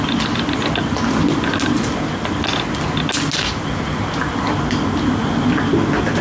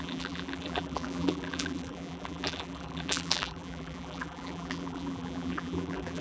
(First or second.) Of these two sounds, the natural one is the first